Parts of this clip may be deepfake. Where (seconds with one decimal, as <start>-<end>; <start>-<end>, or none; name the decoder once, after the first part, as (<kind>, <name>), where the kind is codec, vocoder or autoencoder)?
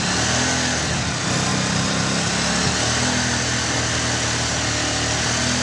none